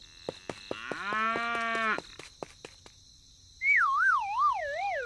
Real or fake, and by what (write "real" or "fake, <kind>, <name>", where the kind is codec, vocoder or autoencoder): real